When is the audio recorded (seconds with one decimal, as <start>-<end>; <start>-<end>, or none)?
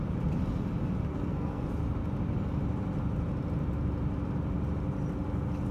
0.0-1.1; 1.6-5.7